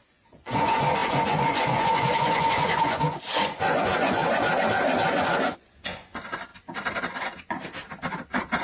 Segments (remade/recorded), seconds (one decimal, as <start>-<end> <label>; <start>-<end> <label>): 0.0-4.2 remade; 4.2-5.2 recorded; 5.2-6.5 remade; 6.5-7.0 recorded; 7.0-7.6 remade; 7.6-8.6 recorded

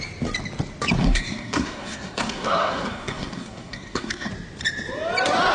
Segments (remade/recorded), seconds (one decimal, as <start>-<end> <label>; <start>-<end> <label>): 0.0-1.0 recorded; 1.0-4.3 remade; 4.3-5.5 recorded

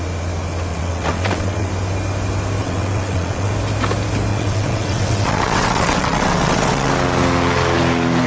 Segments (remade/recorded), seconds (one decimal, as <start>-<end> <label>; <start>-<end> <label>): 0.0-0.7 recorded; 0.7-1.7 remade; 1.7-2.6 recorded; 2.6-3.5 remade; 3.5-4.3 recorded; 4.3-6.9 remade; 6.9-8.3 recorded

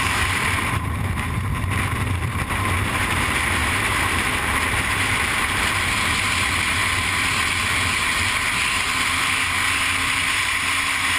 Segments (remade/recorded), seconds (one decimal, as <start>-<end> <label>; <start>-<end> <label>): 0.0-1.5 remade; 1.5-2.0 recorded; 2.0-6.8 remade; 6.8-10.0 recorded; 10.0-11.2 remade